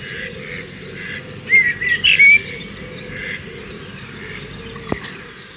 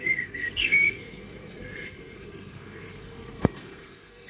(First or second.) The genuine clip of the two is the first